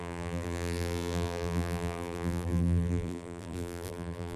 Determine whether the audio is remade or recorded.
remade